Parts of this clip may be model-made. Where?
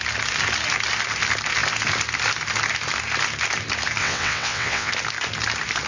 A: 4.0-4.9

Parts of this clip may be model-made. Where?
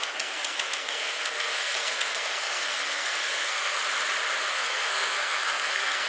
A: 0.0-3.8; 4.5-6.1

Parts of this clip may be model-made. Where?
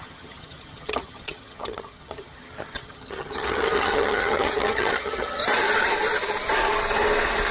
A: 0.0-5.4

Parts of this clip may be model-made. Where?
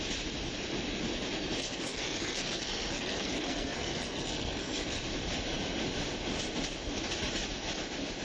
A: 1.6-5.0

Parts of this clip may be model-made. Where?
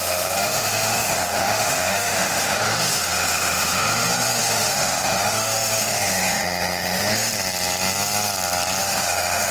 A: 0.0-7.3; 8.8-9.5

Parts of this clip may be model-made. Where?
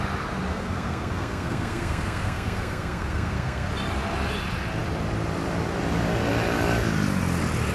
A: 0.5-3.7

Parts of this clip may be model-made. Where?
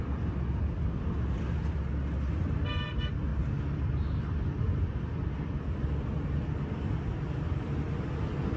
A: none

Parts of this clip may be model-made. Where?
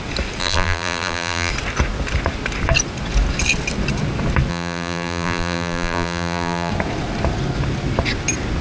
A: 0.4-1.5; 4.5-6.7